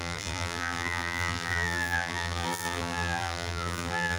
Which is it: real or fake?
fake